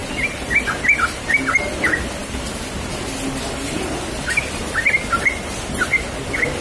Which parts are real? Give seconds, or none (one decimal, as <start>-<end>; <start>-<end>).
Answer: 0.0-6.6